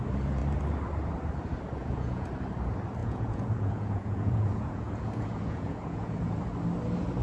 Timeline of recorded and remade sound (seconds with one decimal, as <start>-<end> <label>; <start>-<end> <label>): 0.0-1.8 recorded; 1.8-2.3 remade; 2.3-3.0 recorded; 3.0-6.4 remade; 6.4-7.2 recorded